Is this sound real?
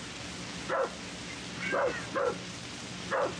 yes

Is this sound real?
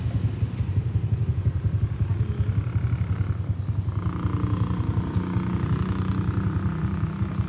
yes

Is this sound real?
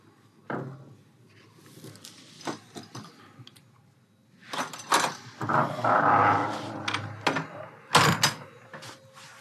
yes